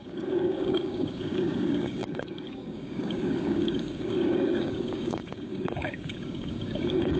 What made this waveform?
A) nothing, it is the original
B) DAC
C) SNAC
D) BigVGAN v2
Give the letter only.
B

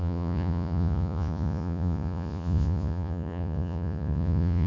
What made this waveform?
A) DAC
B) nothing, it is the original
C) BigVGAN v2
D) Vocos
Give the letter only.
D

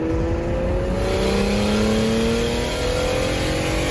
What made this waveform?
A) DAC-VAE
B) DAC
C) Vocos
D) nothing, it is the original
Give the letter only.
D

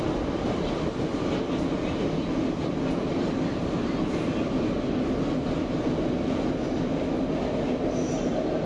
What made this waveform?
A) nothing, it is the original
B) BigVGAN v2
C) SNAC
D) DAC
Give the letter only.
A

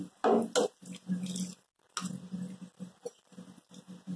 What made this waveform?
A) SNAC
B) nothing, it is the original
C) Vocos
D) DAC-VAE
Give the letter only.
B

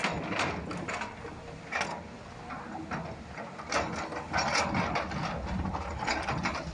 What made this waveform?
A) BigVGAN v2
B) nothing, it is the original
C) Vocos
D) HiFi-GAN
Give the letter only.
B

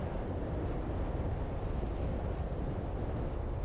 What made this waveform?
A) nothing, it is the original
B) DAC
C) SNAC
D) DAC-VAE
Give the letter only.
A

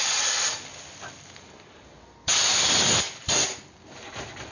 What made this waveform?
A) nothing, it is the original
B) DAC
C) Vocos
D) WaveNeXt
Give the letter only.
A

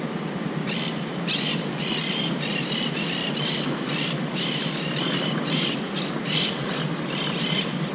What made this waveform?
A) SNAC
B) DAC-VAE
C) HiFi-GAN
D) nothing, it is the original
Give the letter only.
D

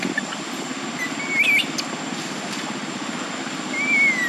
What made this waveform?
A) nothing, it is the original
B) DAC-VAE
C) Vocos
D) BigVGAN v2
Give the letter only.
A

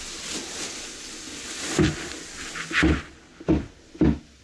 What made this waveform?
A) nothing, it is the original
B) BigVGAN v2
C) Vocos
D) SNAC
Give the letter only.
A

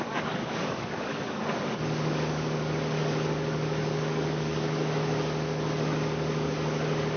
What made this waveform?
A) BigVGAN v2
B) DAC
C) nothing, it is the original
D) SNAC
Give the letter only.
B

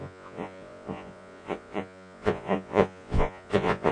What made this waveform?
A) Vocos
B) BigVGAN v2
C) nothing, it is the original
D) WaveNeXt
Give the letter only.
A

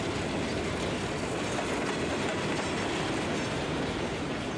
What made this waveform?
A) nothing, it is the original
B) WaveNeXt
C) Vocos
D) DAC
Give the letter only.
A